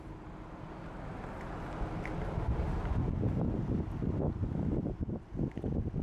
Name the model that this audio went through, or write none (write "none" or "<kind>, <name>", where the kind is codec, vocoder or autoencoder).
none